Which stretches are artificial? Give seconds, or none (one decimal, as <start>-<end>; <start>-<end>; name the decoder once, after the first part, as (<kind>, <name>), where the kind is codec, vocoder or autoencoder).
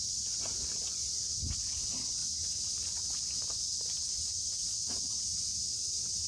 none